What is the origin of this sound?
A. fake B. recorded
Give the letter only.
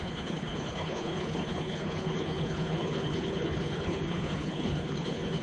A